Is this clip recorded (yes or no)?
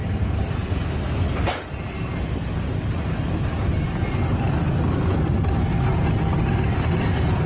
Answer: yes